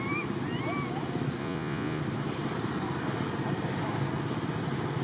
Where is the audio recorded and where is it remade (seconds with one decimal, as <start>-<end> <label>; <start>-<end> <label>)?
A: 0.0-1.4 recorded; 1.4-2.0 remade; 2.0-5.0 recorded